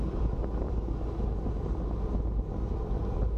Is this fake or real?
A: real